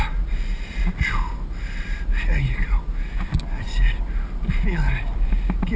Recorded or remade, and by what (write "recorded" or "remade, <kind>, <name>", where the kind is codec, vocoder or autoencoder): recorded